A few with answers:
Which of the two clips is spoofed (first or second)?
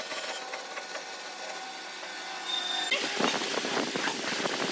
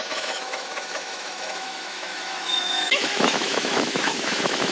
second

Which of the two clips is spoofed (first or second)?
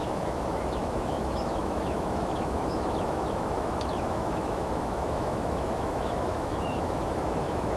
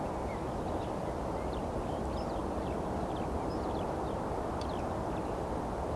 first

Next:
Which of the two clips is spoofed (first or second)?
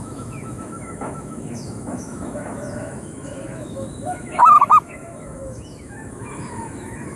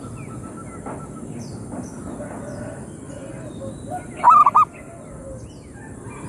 first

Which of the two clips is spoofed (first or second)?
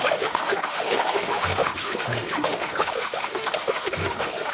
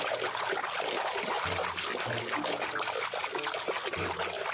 first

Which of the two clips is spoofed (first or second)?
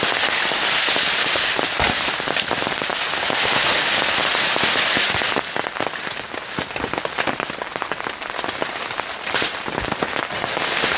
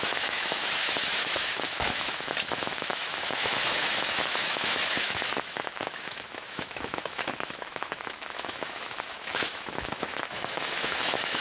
second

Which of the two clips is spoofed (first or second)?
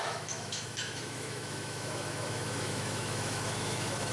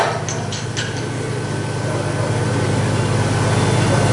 first